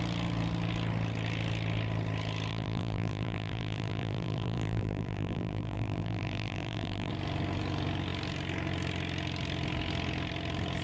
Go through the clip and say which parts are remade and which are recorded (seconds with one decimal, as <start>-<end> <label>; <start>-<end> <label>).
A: 0.0-2.5 recorded; 2.5-7.1 remade; 7.1-10.8 recorded